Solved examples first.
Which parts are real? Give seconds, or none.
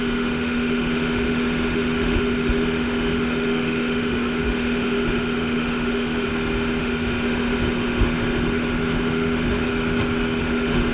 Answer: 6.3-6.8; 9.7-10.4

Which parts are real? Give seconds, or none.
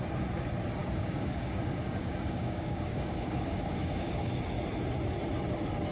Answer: 0.0-0.8; 4.3-5.9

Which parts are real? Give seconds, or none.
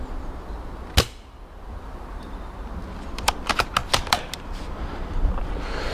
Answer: 0.0-5.9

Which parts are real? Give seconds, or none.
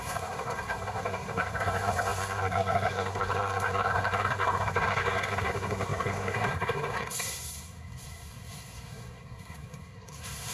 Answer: none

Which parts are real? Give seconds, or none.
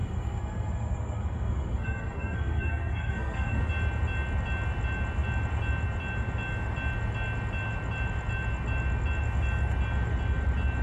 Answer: 3.6-10.8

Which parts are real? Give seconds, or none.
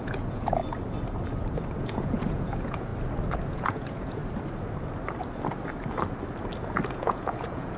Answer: 0.6-1.8; 2.9-3.5; 4.2-6.9